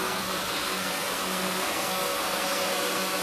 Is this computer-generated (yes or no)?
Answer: yes